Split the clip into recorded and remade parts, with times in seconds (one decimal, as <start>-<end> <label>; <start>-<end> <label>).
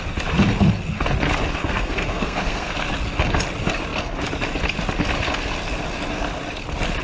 0.0-1.6 recorded; 1.6-2.7 remade; 2.7-7.0 recorded